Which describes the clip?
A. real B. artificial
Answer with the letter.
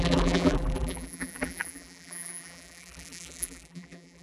B